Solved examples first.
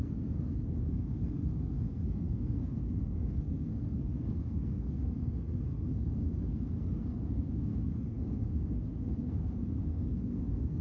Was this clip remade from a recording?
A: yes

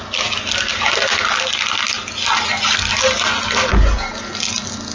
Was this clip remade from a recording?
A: no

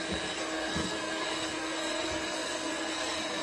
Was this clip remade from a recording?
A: yes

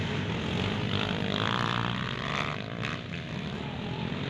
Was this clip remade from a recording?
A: no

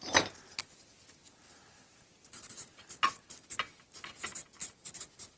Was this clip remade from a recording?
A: no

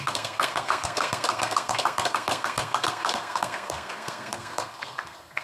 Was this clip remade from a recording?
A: yes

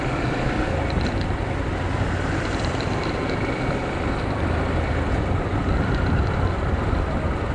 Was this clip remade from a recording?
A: no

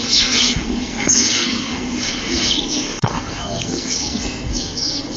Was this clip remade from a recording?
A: yes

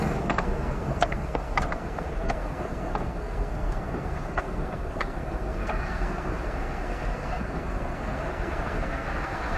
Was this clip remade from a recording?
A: yes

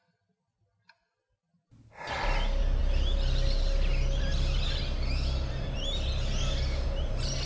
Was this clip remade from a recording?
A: no